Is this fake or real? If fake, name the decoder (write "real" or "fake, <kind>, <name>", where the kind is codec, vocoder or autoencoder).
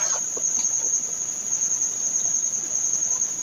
real